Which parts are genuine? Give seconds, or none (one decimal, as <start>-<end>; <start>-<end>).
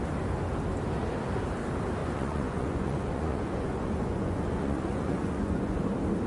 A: 0.0-2.0; 5.8-6.3